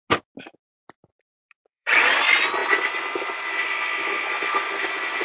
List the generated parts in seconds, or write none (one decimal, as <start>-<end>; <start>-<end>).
1.1-2.0